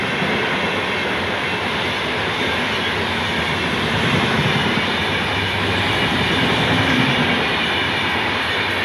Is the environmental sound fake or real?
real